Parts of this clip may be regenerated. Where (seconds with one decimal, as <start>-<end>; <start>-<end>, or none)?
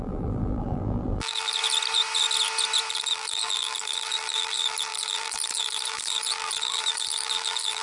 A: 0.0-1.6; 2.9-7.8